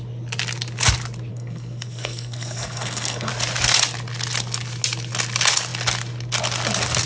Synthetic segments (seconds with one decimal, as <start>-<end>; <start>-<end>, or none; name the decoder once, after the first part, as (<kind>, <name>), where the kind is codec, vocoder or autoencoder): 1.3-3.3 (codec, SNAC)